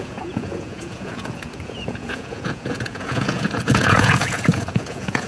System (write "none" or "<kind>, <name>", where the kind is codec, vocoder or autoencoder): vocoder, Vocos